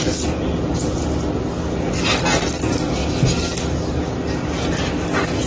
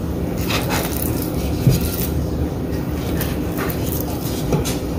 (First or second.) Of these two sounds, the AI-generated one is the second